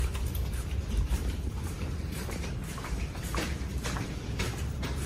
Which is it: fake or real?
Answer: fake